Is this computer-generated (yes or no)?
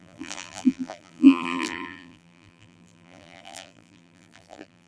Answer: yes